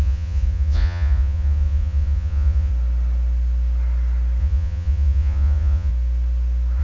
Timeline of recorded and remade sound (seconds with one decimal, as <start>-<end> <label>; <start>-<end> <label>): 0.0-2.7 remade; 2.7-4.4 recorded; 4.4-5.9 remade; 5.9-6.8 recorded